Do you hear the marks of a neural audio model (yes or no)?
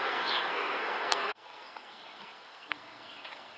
yes